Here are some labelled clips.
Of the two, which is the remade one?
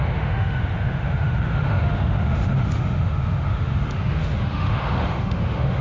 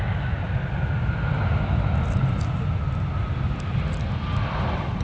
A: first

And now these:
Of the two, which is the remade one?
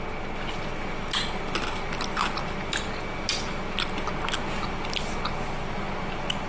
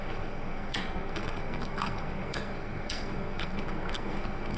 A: second